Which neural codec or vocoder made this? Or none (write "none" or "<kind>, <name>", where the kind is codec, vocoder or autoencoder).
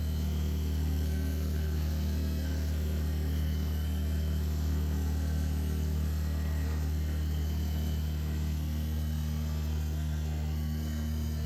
codec, SNAC